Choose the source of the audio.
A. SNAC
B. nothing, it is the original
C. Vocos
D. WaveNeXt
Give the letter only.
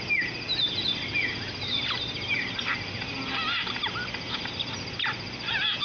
B